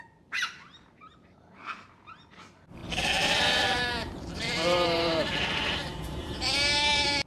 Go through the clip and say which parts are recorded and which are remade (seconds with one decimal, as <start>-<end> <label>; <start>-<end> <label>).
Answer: 0.0-7.3 remade